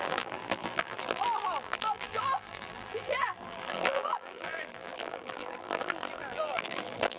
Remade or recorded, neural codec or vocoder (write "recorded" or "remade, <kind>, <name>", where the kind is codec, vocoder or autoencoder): remade, vocoder, BigVGAN v2